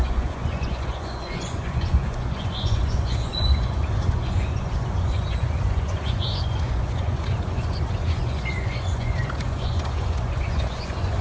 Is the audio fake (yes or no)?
yes